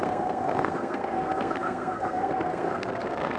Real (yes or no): no